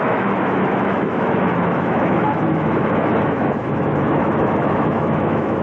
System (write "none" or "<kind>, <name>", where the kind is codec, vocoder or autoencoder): autoencoder, DAC-VAE